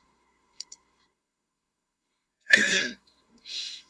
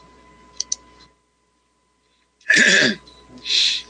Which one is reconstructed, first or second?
first